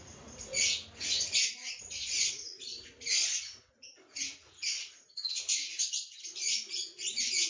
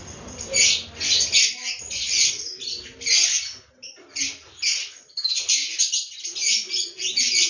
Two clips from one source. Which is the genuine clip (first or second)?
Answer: second